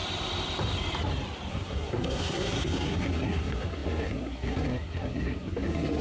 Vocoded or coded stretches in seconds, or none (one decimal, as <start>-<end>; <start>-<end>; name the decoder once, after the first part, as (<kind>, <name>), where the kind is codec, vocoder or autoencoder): 1.5-6.0 (codec, SNAC)